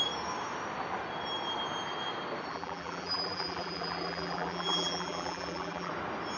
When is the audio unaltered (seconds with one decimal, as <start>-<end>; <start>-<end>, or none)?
0.0-2.5; 5.9-6.4